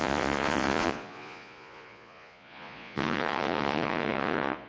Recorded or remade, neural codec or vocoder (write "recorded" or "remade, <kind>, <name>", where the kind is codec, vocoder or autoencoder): remade, vocoder, Vocos